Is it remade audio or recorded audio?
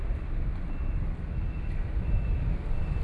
recorded